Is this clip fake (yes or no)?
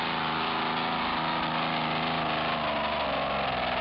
no